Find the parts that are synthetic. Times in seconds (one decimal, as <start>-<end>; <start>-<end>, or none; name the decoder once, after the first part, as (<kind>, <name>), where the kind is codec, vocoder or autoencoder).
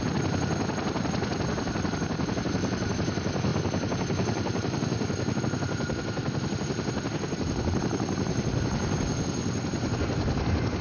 none